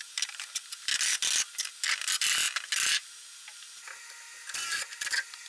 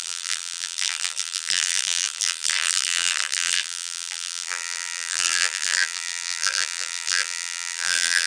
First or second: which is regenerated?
second